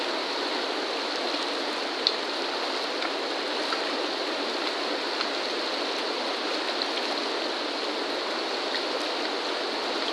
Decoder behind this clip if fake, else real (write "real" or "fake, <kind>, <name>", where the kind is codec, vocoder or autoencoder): real